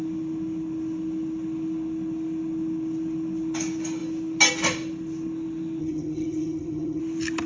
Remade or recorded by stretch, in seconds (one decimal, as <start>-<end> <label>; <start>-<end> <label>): 0.0-5.8 recorded; 5.8-7.0 remade; 7.0-7.5 recorded